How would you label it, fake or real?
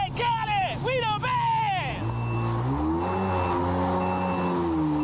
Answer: real